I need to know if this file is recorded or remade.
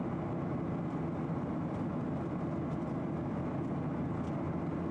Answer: recorded